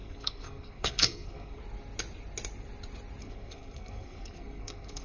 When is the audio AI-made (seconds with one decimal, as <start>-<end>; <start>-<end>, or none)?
0.0-1.6; 3.2-5.0

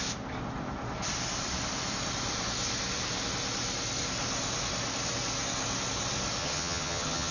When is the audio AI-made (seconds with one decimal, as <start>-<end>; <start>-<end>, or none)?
6.4-7.3

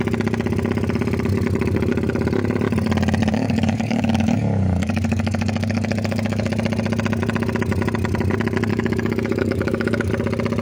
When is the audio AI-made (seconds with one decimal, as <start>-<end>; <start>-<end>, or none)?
3.3-6.5; 8.7-10.1

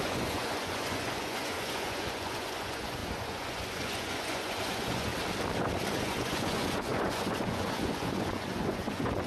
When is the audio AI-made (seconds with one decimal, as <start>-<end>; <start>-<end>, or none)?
0.0-5.1; 6.0-9.3

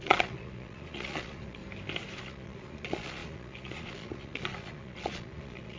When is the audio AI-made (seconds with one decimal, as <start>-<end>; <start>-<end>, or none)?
0.0-1.6; 2.2-5.8